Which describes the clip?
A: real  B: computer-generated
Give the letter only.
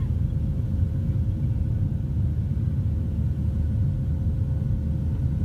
A